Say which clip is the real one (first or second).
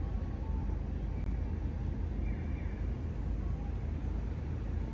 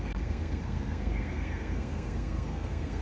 first